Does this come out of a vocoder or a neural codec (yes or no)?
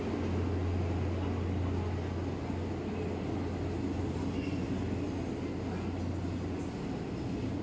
no